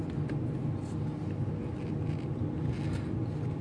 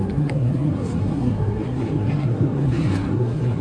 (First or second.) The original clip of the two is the first